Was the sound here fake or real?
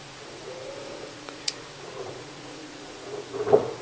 fake